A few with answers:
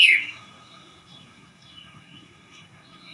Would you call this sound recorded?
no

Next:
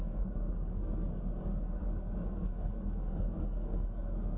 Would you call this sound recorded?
no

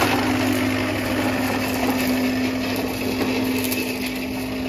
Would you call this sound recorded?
yes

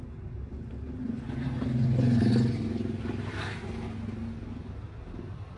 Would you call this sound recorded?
yes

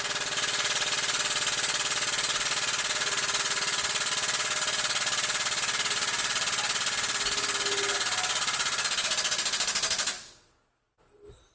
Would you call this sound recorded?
yes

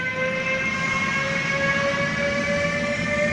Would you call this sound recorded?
yes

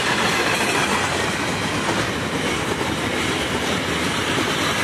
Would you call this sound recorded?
yes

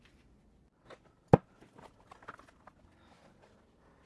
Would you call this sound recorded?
yes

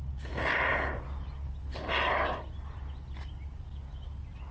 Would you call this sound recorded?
yes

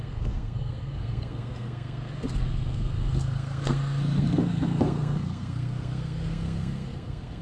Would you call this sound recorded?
no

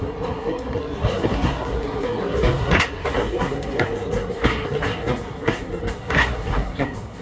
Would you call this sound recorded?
no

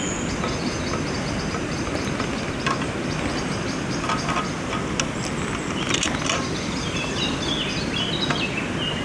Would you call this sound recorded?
yes